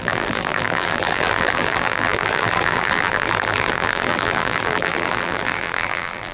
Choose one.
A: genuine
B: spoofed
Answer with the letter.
B